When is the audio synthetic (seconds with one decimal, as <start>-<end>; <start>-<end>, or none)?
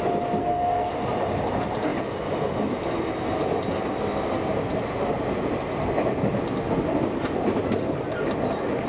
0.4-0.9